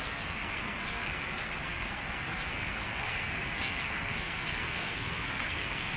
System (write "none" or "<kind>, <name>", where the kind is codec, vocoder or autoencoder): codec, SNAC